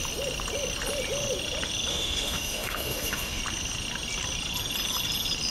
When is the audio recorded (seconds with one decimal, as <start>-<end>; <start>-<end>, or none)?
0.0-1.9; 3.4-5.5